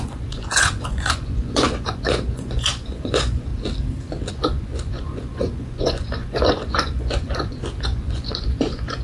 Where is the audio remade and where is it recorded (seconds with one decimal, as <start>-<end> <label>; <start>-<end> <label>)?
0.0-3.5 remade; 3.5-4.3 recorded; 4.3-9.0 remade